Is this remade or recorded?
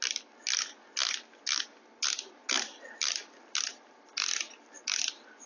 recorded